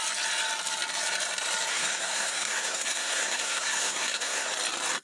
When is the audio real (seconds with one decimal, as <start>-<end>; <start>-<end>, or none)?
0.0-1.7; 4.5-5.0

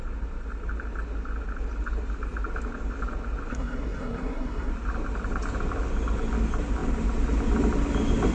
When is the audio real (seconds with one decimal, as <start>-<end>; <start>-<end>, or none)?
0.0-3.5; 4.7-8.3

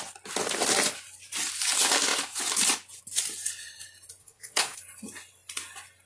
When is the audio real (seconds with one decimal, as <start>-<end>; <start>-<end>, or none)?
0.0-4.2; 4.8-6.1

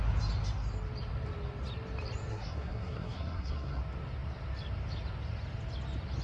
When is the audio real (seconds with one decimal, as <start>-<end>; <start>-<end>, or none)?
0.0-2.3; 3.8-6.2

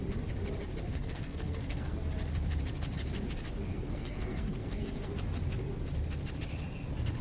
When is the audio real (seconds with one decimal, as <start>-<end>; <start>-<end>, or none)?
0.0-0.9; 2.0-3.7; 5.1-7.2

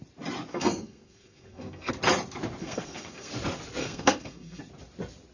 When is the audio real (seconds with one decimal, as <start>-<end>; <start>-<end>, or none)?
0.0-0.5; 1.9-2.6; 3.3-3.8; 4.6-5.3

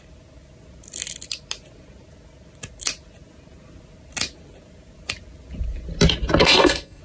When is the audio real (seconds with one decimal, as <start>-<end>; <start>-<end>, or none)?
0.0-6.4

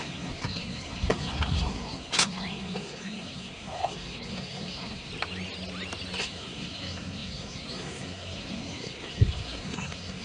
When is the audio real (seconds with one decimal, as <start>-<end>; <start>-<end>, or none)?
5.1-6.2